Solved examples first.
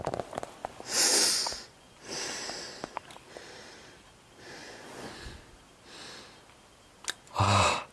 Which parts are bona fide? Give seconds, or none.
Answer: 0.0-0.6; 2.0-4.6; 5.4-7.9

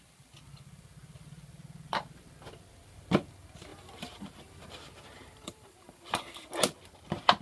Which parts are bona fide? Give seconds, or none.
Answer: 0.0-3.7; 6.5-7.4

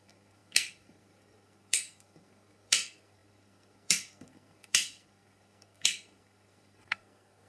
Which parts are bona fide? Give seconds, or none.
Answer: none

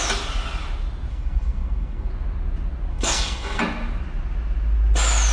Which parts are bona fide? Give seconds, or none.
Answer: 0.0-1.1; 2.1-2.9; 3.6-5.3

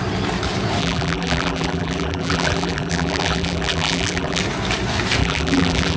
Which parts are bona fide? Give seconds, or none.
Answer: 0.0-0.8; 4.4-5.2

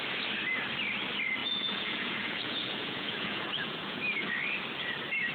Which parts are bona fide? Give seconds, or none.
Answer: 0.0-1.4; 4.0-5.3

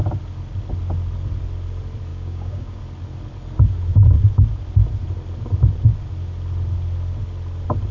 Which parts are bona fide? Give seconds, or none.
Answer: 0.0-2.1; 2.8-7.9